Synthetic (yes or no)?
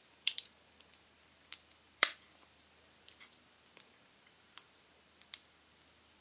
yes